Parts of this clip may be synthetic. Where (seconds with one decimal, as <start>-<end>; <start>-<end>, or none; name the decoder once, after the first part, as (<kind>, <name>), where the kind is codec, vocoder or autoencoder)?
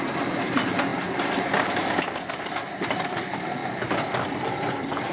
0.0-3.6 (vocoder, BigVGAN v2); 4.2-5.1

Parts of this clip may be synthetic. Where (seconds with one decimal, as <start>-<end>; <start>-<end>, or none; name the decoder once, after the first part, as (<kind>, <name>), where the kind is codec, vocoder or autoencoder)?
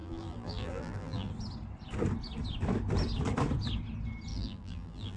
0.0-1.3 (vocoder, BigVGAN v2); 4.3-5.2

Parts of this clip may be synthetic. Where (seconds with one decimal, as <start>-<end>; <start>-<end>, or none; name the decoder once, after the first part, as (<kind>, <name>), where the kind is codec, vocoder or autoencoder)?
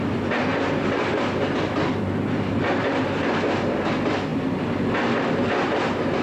0.5-3.6 (vocoder, BigVGAN v2)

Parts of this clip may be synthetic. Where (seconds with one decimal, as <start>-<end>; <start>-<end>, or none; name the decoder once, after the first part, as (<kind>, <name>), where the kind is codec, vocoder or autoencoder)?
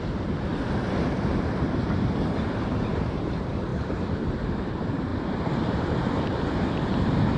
0.0-0.5 (vocoder, BigVGAN v2); 1.1-5.1; 5.7-7.4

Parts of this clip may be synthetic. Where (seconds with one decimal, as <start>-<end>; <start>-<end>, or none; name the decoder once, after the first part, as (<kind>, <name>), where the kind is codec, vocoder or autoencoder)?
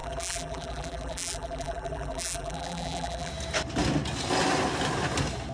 0.0-3.3 (vocoder, BigVGAN v2)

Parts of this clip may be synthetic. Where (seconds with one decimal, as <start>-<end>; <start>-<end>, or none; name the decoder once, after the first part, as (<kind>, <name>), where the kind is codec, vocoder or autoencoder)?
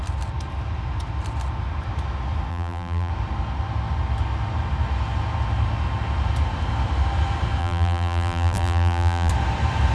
2.5-3.1 (vocoder, BigVGAN v2); 7.6-9.3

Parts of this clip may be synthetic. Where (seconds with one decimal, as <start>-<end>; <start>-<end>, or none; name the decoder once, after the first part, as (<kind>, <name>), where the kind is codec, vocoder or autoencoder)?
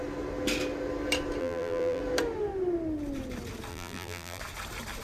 1.4-2.0 (vocoder, BigVGAN v2); 3.7-4.4